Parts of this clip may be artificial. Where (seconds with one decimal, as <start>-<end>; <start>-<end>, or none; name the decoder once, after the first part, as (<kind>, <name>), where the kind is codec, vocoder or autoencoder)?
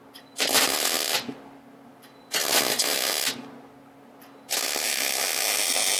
none